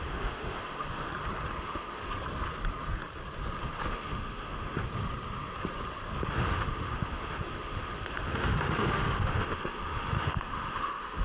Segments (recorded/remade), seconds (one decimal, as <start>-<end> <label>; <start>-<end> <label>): 0.0-1.1 remade; 1.1-1.6 recorded; 1.6-2.0 remade; 2.0-3.9 recorded; 3.9-4.8 remade; 4.8-6.3 recorded; 6.3-11.2 remade